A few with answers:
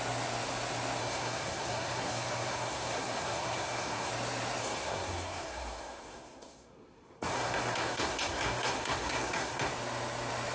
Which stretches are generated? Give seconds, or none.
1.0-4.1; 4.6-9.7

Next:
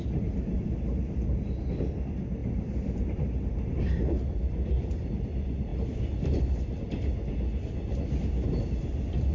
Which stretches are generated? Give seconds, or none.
2.4-5.1; 5.7-6.4